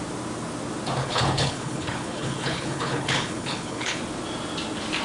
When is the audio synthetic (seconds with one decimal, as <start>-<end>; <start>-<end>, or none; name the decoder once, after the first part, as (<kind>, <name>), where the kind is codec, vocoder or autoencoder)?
1.0-4.0 (codec, HILCodec)